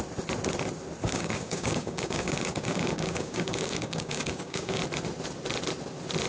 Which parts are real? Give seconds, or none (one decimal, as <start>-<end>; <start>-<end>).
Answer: 0.0-1.0; 4.8-6.3